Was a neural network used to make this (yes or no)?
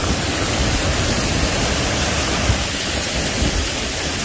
no